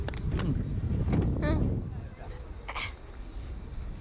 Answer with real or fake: real